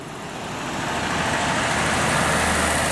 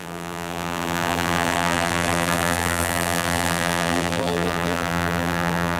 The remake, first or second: second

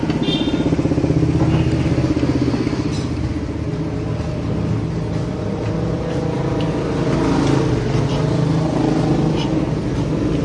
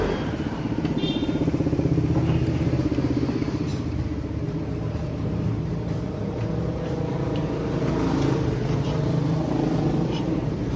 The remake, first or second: second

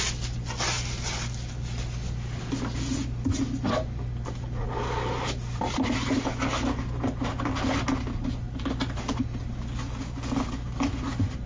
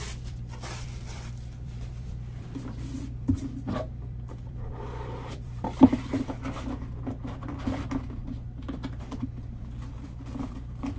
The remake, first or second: second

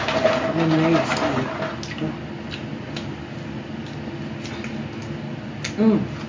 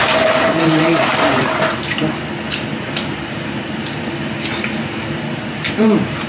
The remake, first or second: second